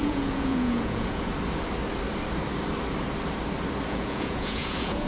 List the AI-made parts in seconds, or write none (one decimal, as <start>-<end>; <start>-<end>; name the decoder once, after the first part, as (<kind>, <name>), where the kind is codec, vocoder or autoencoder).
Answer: 0.0-1.3 (vocoder, Vocos); 3.9-5.1